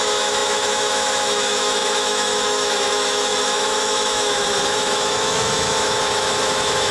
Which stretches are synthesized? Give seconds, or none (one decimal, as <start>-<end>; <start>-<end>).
0.0-6.9